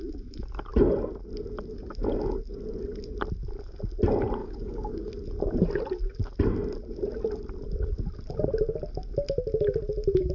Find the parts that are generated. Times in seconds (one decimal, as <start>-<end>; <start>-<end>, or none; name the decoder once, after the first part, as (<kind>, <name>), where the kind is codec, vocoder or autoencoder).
4.4-5.1 (codec, DAC)